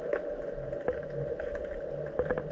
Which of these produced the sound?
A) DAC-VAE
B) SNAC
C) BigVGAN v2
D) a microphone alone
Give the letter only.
D